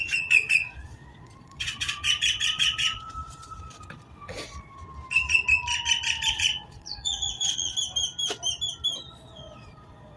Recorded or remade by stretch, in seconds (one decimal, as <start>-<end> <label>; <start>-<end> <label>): 0.0-4.8 remade; 4.8-6.3 recorded; 6.3-7.7 remade; 7.7-9.1 recorded; 9.1-10.2 remade